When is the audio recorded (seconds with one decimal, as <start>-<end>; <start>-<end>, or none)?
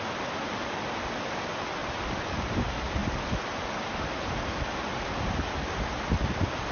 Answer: 0.0-1.8; 2.3-6.7